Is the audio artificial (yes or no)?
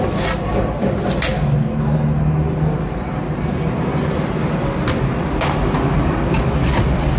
no